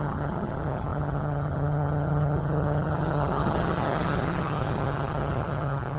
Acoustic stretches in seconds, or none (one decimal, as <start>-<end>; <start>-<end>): none